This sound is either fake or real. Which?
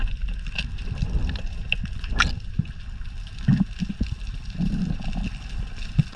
real